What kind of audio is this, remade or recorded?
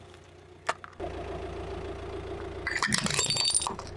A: recorded